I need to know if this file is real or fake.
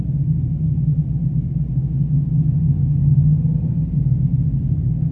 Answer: real